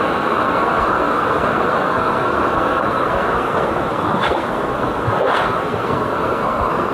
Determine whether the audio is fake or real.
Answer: fake